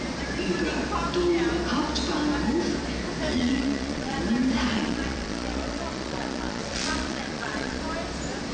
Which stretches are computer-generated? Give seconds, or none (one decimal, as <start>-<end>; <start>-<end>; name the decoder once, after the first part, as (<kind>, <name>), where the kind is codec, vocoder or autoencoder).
3.3-4.2 (vocoder, Vocos); 4.7-7.8